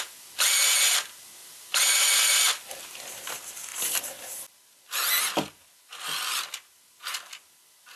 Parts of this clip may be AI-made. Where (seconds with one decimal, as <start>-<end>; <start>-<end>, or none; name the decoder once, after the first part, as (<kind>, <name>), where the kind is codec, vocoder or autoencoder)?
1.4-3.1 (vocoder, BigVGAN v2)